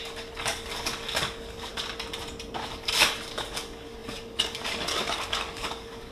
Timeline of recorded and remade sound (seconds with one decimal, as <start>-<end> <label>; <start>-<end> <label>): 0.0-1.7 remade; 1.7-2.7 recorded; 2.7-6.1 remade

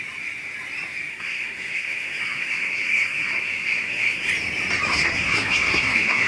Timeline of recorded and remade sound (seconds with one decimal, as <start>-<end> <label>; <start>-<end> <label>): 0.0-1.1 recorded; 1.1-4.3 remade; 4.3-4.9 recorded; 4.9-6.3 remade

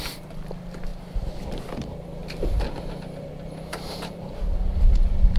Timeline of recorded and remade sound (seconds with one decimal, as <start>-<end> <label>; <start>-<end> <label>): 0.0-2.2 recorded; 2.2-2.9 remade; 2.9-3.7 recorded; 3.7-4.3 remade; 4.3-5.4 recorded